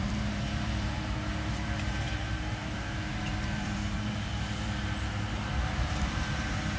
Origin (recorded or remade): remade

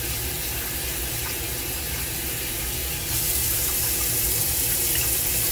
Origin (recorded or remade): remade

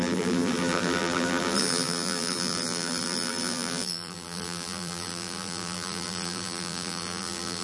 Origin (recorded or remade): remade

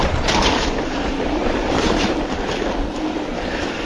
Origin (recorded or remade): remade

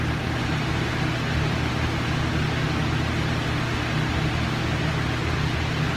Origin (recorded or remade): recorded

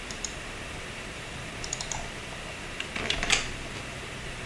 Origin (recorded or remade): remade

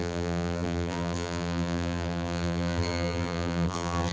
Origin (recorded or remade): remade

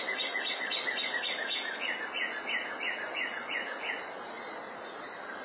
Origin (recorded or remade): recorded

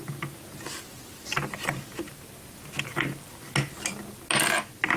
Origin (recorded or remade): recorded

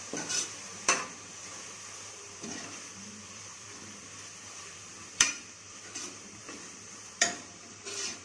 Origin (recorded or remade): remade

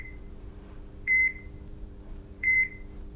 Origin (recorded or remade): remade